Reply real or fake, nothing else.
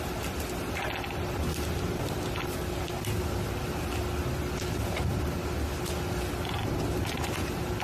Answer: real